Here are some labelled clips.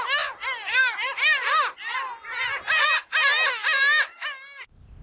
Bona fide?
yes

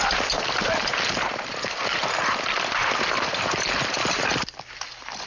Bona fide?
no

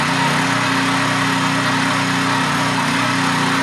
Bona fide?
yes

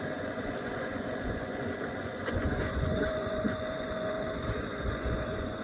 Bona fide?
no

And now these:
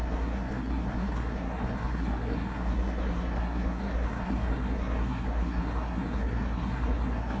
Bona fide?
no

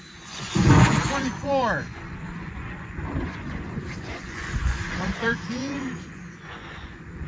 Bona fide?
no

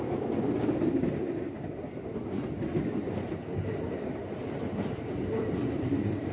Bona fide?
no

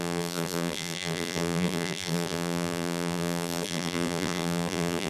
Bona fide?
no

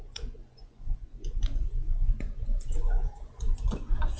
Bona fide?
no